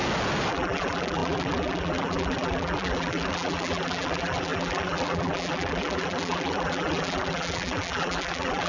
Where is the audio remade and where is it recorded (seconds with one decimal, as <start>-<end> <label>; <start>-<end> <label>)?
0.0-0.5 recorded; 0.5-8.7 remade